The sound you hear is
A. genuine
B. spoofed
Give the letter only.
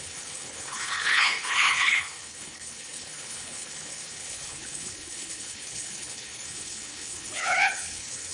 B